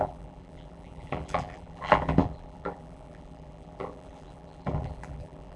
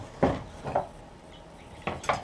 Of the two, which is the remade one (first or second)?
first